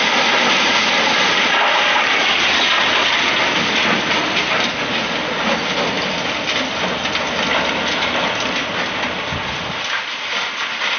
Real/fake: real